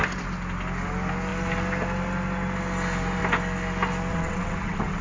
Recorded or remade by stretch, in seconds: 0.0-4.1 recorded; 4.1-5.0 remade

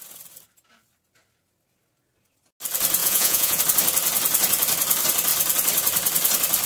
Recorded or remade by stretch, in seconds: 0.0-3.0 recorded; 3.0-3.6 remade; 3.6-6.7 recorded

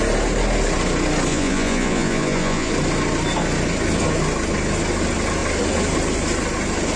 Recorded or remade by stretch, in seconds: 0.0-1.3 recorded; 1.3-2.7 remade; 2.7-7.0 recorded

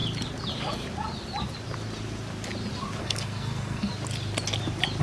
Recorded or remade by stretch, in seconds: 0.0-3.0 recorded; 3.0-3.9 remade; 3.9-5.0 recorded

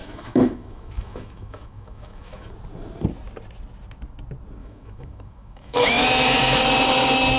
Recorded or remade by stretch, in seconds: 0.0-2.5 remade; 2.5-4.6 recorded; 4.6-6.6 remade; 6.6-7.4 recorded

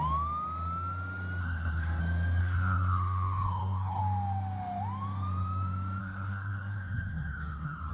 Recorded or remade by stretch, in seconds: 0.0-1.4 recorded; 1.4-2.0 remade; 2.0-2.4 recorded; 2.4-4.0 remade; 4.0-6.0 recorded; 6.0-7.9 remade

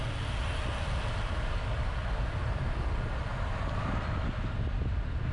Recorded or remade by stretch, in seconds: 0.0-5.3 recorded